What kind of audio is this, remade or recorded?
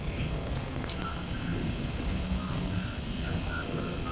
remade